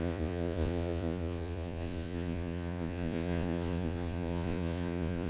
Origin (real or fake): fake